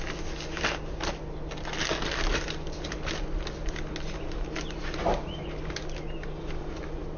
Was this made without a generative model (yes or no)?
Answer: yes